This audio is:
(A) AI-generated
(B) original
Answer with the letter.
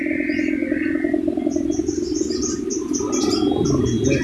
B